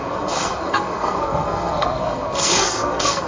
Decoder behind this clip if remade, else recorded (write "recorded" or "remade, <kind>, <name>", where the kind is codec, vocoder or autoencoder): remade, codec, SNAC